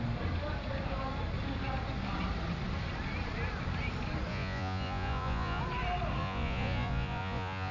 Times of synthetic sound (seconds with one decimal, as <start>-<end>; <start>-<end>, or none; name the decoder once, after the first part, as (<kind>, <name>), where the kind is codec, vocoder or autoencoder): 4.3-5.6 (vocoder, Vocos); 6.2-7.7